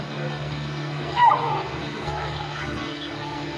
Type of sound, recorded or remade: remade